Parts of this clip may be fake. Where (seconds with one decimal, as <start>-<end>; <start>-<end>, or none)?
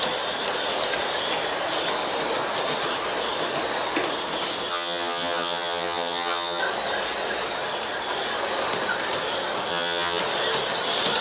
4.7-6.6; 9.7-10.2